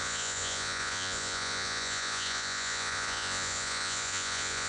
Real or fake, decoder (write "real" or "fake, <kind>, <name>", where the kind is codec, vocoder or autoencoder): fake, vocoder, Vocos